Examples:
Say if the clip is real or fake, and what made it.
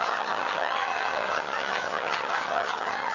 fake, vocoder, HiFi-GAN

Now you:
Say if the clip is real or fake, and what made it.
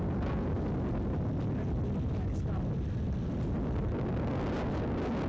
real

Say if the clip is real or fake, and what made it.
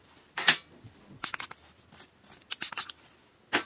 real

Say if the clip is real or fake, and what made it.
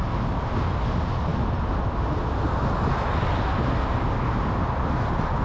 real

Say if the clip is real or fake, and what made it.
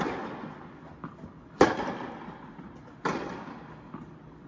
real